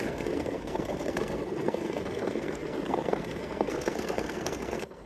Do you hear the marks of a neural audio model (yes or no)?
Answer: yes